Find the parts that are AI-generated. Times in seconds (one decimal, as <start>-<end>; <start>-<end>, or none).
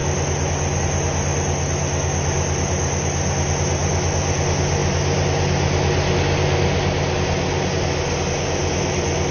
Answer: none